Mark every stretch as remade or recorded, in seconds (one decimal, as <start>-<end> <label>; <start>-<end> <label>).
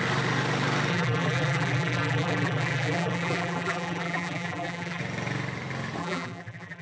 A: 0.0-0.9 recorded; 0.9-5.0 remade; 5.0-6.0 recorded; 6.0-6.8 remade